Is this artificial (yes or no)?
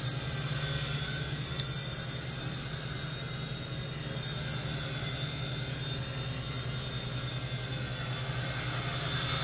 no